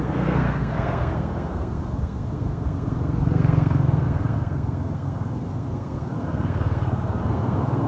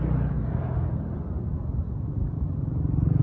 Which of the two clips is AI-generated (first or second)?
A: first